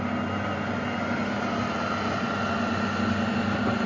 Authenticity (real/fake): real